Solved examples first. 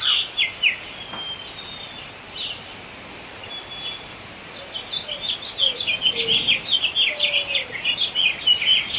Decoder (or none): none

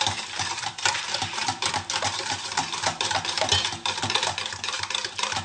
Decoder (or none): vocoder, BigVGAN v2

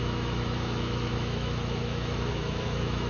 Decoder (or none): autoencoder, DAC-VAE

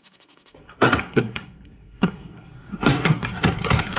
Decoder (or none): codec, SNAC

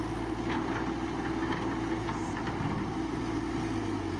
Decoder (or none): none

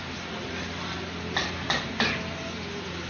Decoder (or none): none